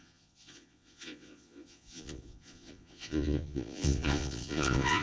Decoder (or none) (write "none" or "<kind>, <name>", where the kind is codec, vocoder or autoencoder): vocoder, Vocos